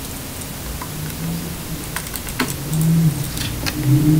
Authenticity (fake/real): real